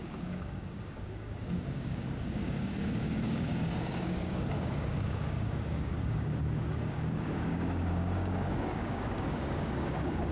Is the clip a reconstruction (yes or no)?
yes